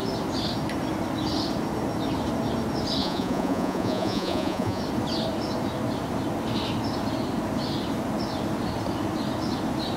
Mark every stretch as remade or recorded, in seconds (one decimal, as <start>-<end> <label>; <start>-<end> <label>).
0.0-3.0 recorded; 3.0-4.8 remade; 4.8-10.0 recorded